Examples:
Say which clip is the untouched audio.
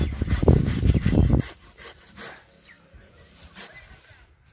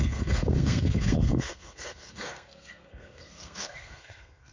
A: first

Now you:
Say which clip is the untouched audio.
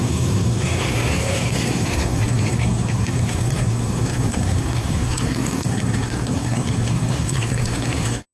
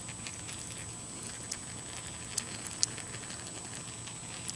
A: second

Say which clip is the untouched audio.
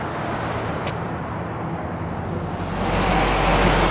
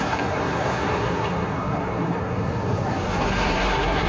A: first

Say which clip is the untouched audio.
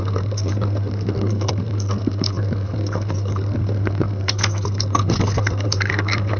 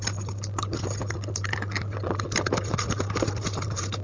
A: second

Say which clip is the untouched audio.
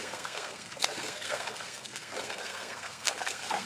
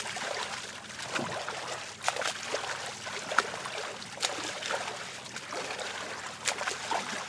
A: second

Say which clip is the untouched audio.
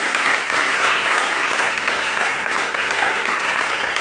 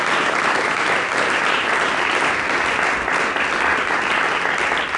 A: second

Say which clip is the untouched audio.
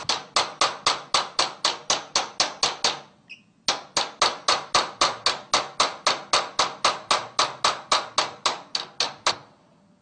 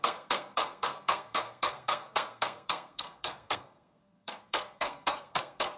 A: first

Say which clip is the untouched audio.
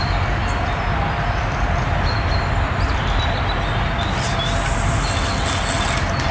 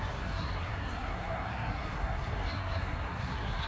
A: first